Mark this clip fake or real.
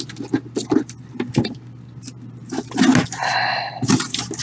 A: real